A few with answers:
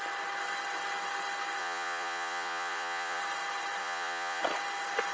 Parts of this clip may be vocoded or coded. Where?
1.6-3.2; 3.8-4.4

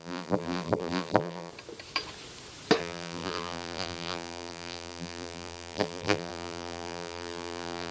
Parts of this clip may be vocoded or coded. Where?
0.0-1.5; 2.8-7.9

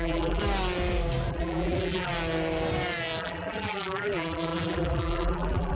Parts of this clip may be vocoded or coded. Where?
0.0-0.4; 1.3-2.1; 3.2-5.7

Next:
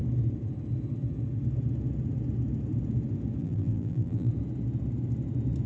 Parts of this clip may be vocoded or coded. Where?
3.4-4.3

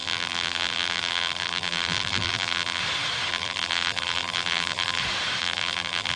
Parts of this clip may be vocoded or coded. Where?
0.0-2.8; 3.3-5.0; 5.4-6.2